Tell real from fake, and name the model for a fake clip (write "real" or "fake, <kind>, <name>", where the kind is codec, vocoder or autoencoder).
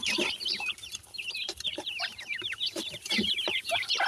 fake, vocoder, BigVGAN v2